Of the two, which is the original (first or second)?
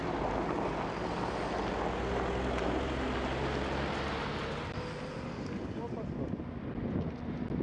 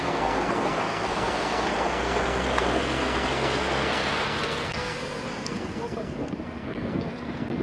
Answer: first